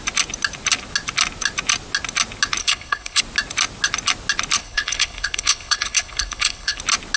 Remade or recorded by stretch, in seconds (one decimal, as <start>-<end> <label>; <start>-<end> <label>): 0.0-2.6 recorded; 2.6-3.2 remade; 3.2-4.6 recorded; 4.6-6.8 remade; 6.8-7.2 recorded